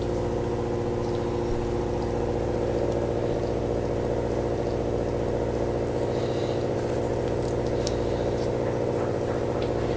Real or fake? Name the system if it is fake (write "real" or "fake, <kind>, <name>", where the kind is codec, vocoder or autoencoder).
real